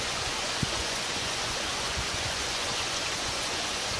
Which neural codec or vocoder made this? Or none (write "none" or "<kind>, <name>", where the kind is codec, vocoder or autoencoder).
vocoder, Vocos